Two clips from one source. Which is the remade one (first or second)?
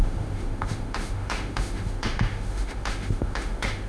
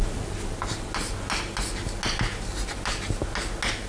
first